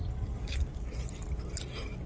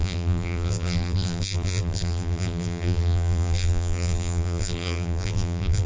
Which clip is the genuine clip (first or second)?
first